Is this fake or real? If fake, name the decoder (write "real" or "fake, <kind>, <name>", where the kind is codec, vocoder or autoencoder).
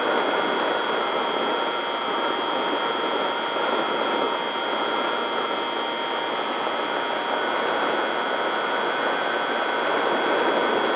real